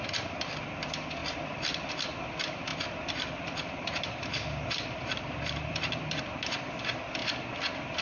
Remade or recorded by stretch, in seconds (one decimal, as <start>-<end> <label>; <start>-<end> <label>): 0.0-1.2 recorded; 1.2-1.9 remade; 1.9-2.7 recorded; 2.7-6.2 remade; 6.2-8.0 recorded